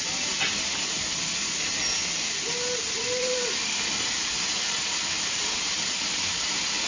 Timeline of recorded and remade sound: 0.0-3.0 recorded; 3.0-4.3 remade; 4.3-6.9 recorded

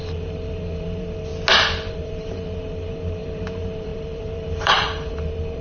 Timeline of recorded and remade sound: 0.0-1.3 remade; 1.3-1.9 recorded; 1.9-5.6 remade

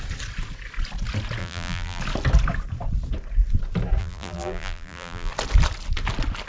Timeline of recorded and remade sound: 0.0-1.4 recorded; 1.4-2.0 remade; 2.0-4.0 recorded; 4.0-5.3 remade; 5.3-6.5 recorded

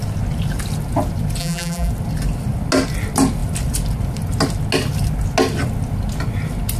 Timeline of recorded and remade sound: 0.0-1.4 recorded; 1.4-1.9 remade; 1.9-6.8 recorded

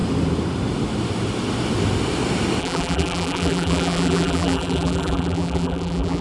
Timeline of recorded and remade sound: 0.0-2.6 recorded; 2.6-6.2 remade

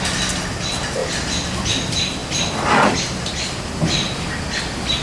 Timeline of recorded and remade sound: 0.0-1.0 recorded; 1.0-1.7 remade; 1.7-5.0 recorded

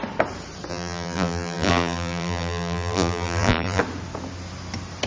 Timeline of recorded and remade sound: 0.0-0.7 recorded; 0.7-3.8 remade; 3.8-5.1 recorded